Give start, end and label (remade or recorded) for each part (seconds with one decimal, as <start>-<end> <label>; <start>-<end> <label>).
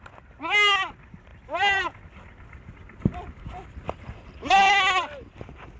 0.0-5.8 recorded